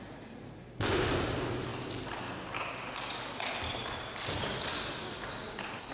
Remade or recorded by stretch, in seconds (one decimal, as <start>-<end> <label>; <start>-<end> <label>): 0.0-5.9 recorded